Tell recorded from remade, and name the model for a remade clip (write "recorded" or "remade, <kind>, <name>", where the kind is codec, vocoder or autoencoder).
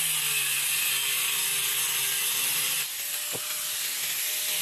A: recorded